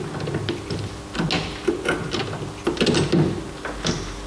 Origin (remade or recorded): recorded